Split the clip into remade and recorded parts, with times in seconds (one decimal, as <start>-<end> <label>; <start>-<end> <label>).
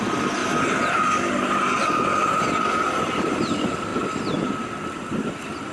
0.0-5.7 recorded